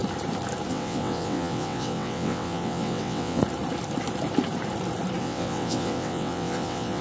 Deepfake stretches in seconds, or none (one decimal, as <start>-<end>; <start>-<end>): 0.7-3.4; 5.2-7.0